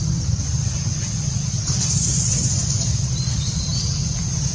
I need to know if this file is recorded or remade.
remade